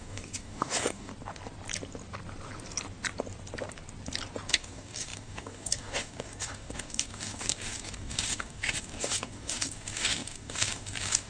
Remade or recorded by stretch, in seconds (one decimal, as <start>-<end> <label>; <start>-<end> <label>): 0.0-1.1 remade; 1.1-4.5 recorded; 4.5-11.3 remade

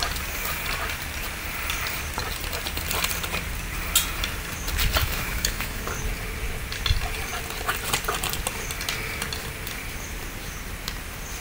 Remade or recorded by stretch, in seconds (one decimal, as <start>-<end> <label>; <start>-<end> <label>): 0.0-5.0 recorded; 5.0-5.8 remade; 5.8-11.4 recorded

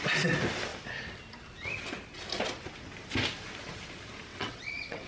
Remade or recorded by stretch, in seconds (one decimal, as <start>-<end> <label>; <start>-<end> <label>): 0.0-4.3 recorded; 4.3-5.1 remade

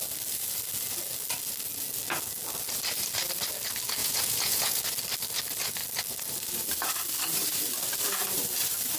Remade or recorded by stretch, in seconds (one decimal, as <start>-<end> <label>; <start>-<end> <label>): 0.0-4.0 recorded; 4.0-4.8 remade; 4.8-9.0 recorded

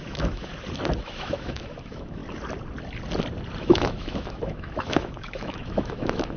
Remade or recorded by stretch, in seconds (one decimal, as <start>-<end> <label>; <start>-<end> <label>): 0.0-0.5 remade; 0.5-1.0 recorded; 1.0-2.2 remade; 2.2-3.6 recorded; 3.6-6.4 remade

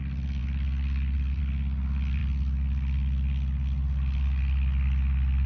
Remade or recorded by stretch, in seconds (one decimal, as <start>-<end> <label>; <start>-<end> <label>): 0.0-5.5 recorded